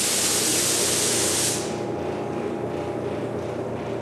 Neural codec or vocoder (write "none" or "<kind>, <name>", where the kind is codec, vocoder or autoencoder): none